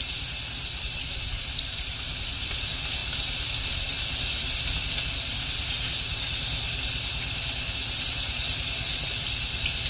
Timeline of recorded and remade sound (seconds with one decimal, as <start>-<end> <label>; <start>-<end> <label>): 0.0-9.9 recorded